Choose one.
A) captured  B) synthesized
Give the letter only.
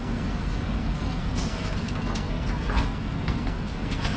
B